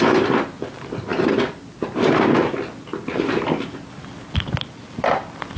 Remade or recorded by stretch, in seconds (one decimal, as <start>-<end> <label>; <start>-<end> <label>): 0.0-5.6 recorded